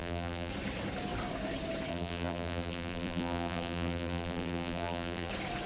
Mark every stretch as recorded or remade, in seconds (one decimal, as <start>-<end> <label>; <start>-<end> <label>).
0.0-0.5 remade; 0.5-1.9 recorded; 1.9-5.3 remade; 5.3-5.7 recorded